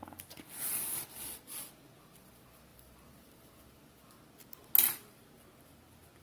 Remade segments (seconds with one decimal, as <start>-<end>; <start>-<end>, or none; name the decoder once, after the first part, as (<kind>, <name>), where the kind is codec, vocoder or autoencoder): 2.7-4.0 (vocoder, BigVGAN v2)